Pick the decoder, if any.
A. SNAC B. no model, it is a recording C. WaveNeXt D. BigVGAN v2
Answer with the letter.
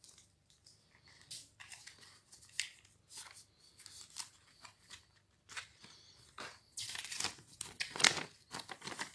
D